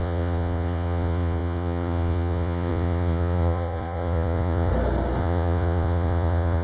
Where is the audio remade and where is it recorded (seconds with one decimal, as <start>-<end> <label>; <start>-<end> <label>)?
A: 0.0-4.7 remade; 4.7-5.2 recorded; 5.2-6.6 remade